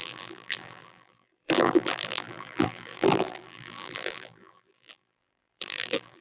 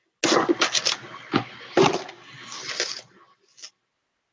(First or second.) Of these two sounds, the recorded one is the second